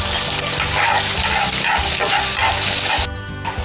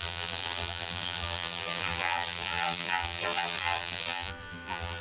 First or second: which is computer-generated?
second